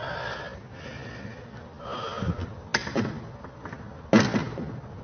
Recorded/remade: recorded